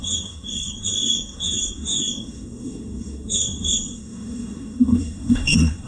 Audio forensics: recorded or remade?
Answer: remade